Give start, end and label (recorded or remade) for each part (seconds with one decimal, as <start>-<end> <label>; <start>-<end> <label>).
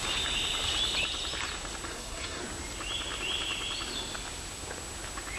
0.0-1.9 recorded; 1.9-2.4 remade; 2.4-5.4 recorded